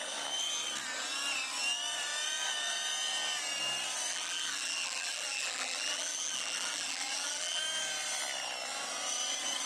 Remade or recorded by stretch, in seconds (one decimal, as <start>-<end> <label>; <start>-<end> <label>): 0.0-4.1 recorded; 4.1-7.6 remade; 7.6-9.7 recorded